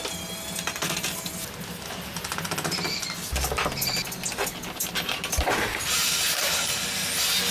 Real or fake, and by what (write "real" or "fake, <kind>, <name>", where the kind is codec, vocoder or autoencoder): real